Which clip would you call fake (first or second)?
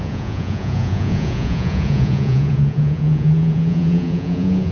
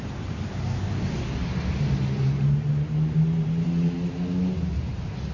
first